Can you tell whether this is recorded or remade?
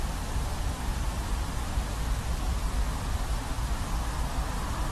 remade